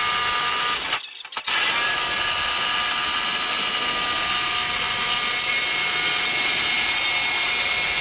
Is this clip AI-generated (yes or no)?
no